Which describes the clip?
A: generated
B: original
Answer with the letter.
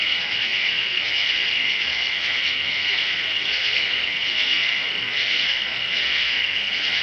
A